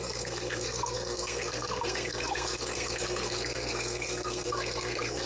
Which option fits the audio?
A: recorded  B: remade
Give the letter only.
B